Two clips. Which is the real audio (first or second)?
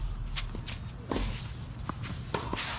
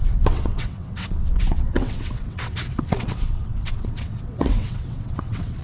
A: first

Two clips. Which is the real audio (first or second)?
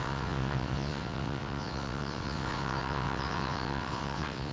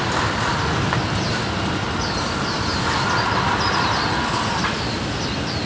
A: second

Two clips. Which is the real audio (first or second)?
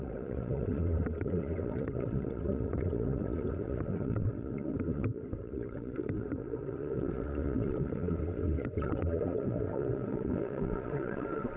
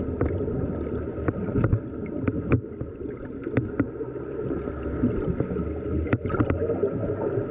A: second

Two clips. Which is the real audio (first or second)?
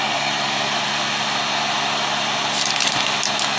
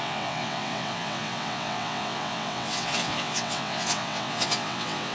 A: first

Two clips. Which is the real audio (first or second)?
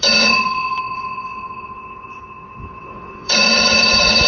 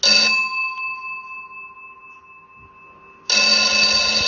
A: second